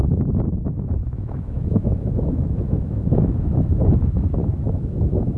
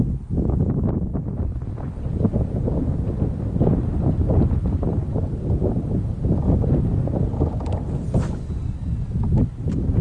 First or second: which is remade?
first